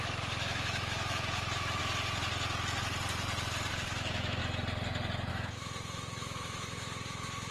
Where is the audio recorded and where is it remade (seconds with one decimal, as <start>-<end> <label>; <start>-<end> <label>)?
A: 0.0-1.8 remade; 1.8-3.7 recorded; 3.7-4.4 remade; 4.4-5.3 recorded; 5.3-7.5 remade